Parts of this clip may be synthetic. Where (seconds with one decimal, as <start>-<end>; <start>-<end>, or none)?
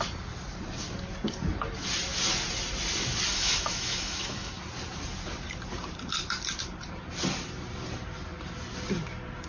3.3-4.5